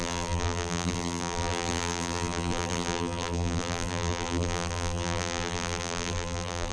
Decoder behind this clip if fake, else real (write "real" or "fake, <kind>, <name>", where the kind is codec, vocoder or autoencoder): fake, vocoder, BigVGAN v2